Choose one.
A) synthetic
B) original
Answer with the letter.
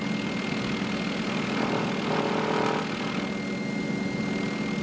B